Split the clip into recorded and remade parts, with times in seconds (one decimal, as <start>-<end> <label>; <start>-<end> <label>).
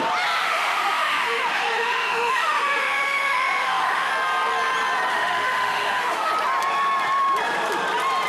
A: 0.0-0.4 recorded; 0.4-4.1 remade; 4.1-5.1 recorded; 5.1-6.3 remade; 6.3-8.3 recorded